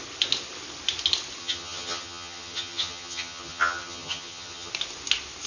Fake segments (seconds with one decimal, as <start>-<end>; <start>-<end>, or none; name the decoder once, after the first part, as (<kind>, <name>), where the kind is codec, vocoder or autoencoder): 1.4-4.7 (vocoder, HiFi-GAN)

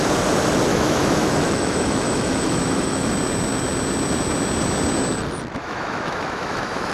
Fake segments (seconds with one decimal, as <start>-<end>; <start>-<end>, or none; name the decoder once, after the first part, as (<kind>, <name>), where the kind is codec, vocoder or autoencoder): 0.7-3.1 (autoencoder, DAC-VAE); 5.6-6.9

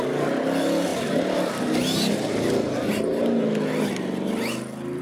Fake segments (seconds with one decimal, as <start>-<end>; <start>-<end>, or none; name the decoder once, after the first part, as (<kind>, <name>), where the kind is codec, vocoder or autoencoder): none

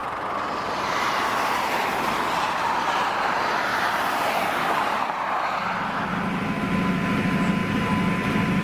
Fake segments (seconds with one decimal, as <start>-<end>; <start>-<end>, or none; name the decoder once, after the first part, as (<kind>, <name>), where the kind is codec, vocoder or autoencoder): 0.0-2.8 (vocoder, BigVGAN v2)

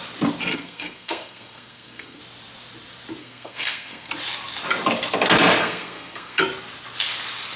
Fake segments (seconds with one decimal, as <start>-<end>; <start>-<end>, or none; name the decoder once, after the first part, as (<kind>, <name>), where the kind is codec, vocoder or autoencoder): 0.5-2.2 (codec, SNAC); 3.2-4.1; 5.6-6.4

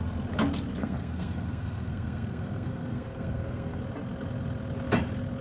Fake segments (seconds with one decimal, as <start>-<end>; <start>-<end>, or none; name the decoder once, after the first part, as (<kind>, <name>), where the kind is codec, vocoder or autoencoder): 0.8-3.8 (codec, SNAC)